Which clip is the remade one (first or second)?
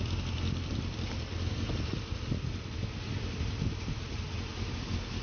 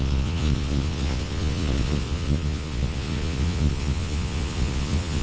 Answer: second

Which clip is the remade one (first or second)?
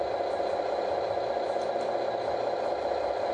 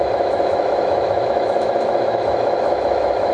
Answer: second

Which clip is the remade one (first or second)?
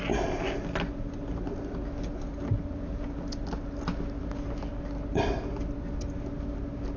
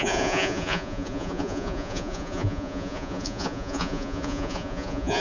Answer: second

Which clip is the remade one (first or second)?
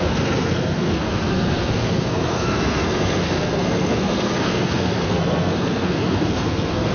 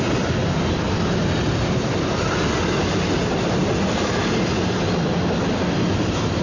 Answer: first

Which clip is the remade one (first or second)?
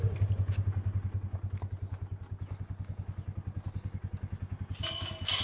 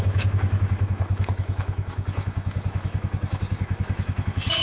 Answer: second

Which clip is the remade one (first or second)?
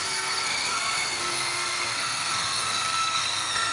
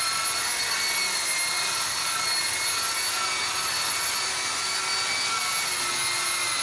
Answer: first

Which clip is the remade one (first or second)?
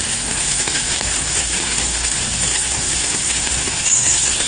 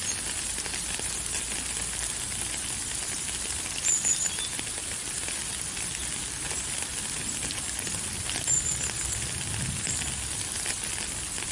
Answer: first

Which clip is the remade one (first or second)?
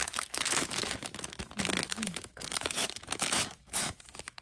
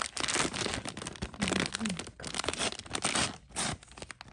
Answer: first